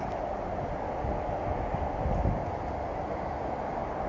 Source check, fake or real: real